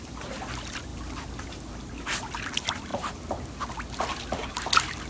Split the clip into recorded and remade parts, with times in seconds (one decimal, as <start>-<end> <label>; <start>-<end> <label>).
0.0-0.9 recorded; 0.9-1.5 remade; 1.5-5.1 recorded